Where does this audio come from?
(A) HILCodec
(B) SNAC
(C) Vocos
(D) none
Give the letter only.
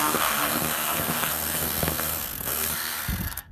B